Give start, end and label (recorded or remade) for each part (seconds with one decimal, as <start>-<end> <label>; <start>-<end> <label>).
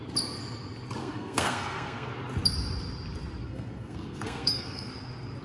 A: 0.0-1.0 recorded; 1.0-2.1 remade; 2.1-3.4 recorded; 3.4-4.9 remade; 4.9-5.4 recorded